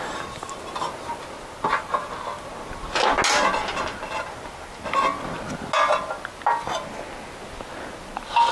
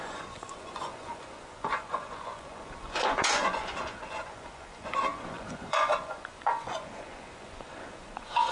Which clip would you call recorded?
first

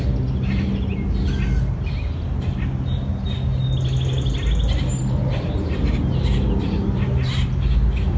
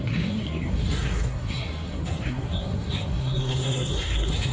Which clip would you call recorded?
first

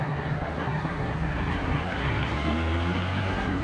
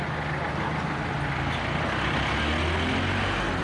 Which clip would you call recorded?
second